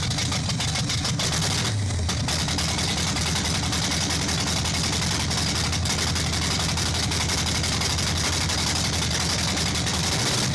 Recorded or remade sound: recorded